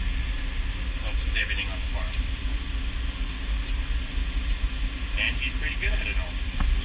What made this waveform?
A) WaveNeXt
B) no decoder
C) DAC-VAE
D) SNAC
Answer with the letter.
B